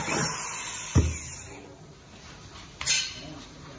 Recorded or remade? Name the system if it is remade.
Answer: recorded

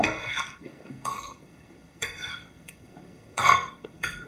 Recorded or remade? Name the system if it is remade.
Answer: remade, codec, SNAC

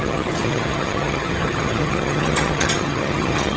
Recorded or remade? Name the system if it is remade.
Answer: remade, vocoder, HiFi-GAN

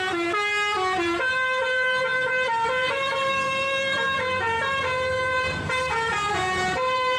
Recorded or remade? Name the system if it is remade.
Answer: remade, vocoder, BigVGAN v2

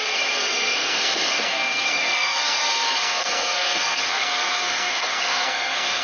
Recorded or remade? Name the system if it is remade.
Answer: remade, codec, SNAC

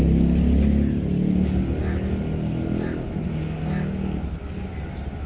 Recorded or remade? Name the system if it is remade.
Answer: recorded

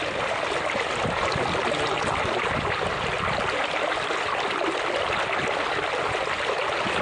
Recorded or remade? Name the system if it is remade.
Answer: recorded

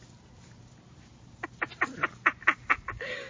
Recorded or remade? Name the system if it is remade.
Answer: recorded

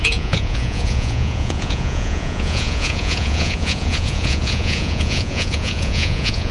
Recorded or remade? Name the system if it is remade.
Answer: remade, vocoder, Vocos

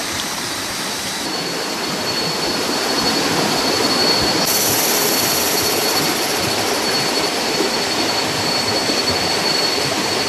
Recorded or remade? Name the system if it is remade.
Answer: remade, vocoder, BigVGAN v2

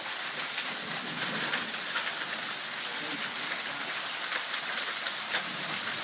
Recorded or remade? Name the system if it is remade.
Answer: recorded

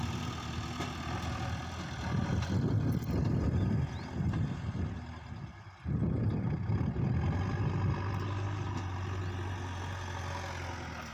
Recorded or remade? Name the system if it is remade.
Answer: recorded